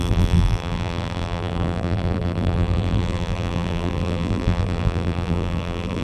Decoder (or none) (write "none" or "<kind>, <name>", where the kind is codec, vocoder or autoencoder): vocoder, BigVGAN v2